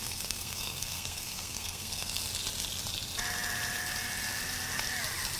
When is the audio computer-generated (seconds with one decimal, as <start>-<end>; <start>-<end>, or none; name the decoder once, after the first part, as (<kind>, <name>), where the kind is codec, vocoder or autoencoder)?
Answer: 0.0-2.2 (codec, SNAC)